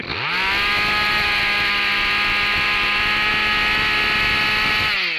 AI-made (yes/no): no